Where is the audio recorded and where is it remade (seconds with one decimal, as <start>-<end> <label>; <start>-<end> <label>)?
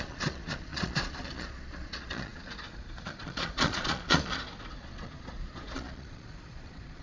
0.0-7.0 remade